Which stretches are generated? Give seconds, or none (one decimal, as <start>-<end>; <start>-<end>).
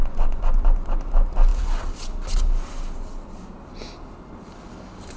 0.0-0.6